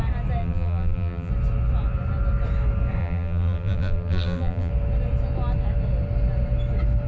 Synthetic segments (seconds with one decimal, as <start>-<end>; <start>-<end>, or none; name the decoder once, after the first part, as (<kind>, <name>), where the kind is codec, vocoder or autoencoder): 0.4-1.3 (vocoder, BigVGAN v2); 3.0-4.7